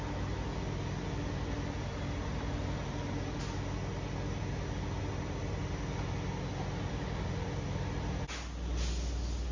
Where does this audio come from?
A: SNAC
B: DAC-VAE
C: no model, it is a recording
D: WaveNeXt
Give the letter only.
C